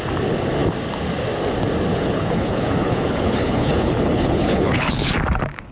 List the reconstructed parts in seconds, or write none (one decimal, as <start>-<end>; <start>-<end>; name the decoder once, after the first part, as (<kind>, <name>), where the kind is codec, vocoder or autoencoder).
1.9-5.1 (codec, HILCodec)